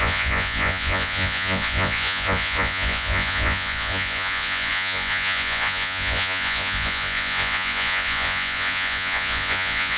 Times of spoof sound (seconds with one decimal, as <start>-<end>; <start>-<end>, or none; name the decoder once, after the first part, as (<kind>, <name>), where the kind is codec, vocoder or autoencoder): 0.0-10.0 (vocoder, Vocos)